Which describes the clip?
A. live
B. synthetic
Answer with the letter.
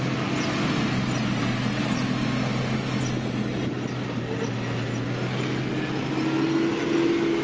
A